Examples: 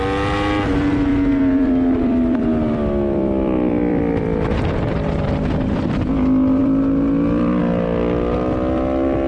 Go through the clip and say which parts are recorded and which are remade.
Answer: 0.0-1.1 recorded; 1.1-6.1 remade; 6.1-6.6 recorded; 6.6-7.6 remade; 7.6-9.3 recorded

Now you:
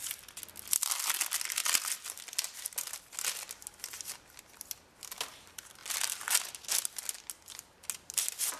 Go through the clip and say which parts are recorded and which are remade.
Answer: 0.0-1.6 recorded; 1.6-2.6 remade; 2.6-5.8 recorded; 5.8-6.5 remade; 6.5-8.6 recorded